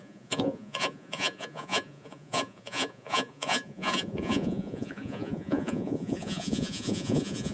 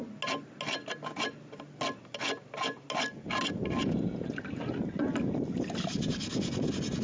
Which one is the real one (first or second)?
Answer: second